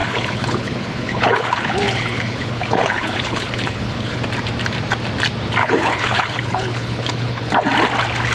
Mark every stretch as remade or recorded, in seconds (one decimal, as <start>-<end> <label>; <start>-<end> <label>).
0.0-4.2 remade; 4.2-5.6 recorded; 5.6-7.5 remade; 7.5-8.3 recorded